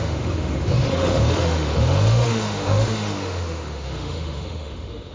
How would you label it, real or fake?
fake